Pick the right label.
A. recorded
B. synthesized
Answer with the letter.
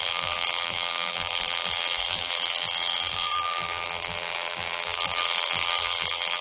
B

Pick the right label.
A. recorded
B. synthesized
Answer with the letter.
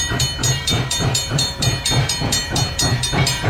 B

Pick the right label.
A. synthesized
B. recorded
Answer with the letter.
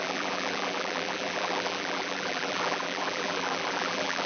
A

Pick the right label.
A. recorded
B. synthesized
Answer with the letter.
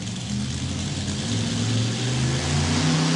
A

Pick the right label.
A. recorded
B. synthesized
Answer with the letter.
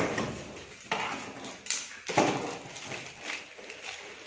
A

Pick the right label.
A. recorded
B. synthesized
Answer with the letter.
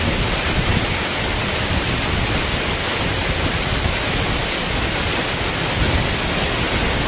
A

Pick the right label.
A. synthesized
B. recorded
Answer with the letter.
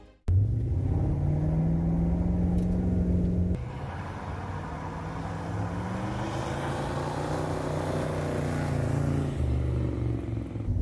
B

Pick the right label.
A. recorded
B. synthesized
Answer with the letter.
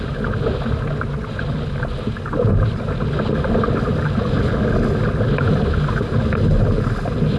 A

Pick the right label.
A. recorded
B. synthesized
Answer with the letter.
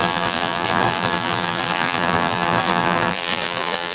B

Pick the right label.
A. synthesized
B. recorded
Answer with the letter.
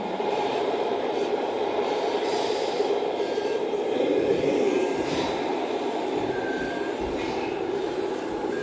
A